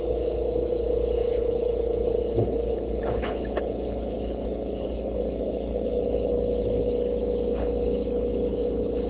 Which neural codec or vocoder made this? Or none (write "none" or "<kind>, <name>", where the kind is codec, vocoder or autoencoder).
codec, HILCodec